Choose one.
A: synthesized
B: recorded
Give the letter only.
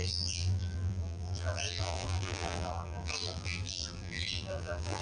A